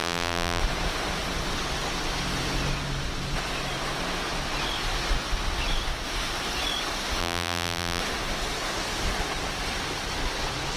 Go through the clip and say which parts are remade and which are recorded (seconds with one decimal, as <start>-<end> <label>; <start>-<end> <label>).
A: 0.0-0.6 remade; 0.6-7.2 recorded; 7.2-8.0 remade; 8.0-10.8 recorded